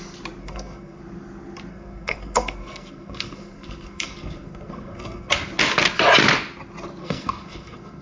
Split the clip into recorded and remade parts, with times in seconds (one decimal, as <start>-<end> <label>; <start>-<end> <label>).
0.0-0.4 recorded; 0.4-1.0 remade; 1.0-1.7 recorded; 1.7-5.3 remade; 5.3-7.0 recorded; 7.0-8.0 remade